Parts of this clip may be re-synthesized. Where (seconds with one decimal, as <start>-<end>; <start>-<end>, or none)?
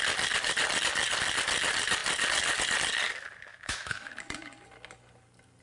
3.5-4.1